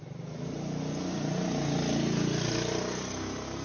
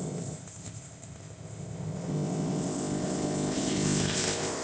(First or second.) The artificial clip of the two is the second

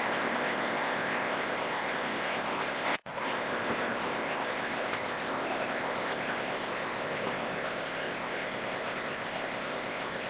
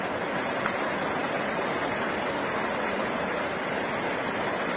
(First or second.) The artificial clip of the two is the first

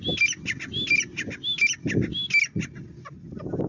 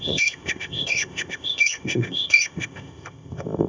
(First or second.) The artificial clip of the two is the second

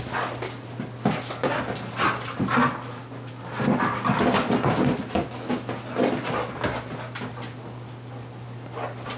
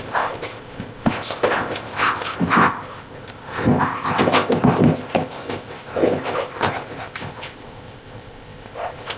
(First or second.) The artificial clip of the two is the second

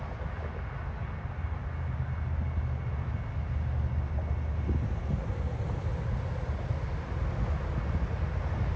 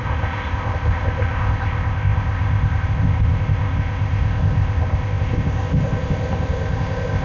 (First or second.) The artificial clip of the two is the second